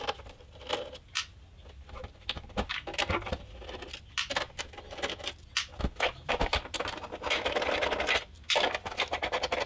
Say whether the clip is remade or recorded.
recorded